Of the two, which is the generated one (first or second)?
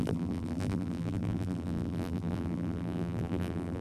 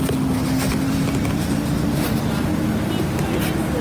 first